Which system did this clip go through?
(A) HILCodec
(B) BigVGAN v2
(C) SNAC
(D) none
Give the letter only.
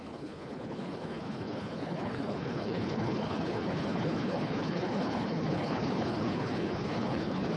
A